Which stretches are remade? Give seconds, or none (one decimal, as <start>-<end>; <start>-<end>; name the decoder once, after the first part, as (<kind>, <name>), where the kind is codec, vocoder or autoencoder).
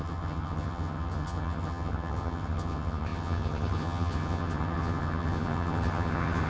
0.0-6.5 (vocoder, HiFi-GAN)